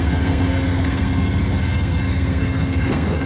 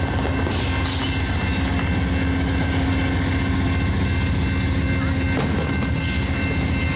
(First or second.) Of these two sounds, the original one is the second